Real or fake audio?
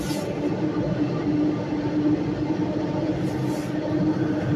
real